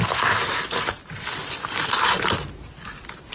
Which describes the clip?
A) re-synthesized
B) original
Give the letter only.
B